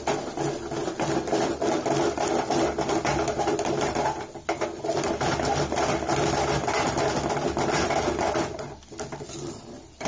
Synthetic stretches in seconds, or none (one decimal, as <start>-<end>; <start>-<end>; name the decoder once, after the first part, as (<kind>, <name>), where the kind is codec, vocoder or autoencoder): none